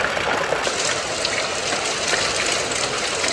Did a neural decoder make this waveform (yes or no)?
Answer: no